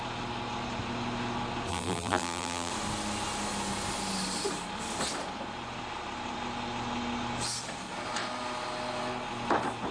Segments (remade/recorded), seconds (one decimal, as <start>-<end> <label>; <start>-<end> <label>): 0.0-1.7 recorded; 1.7-2.7 remade; 2.7-9.9 recorded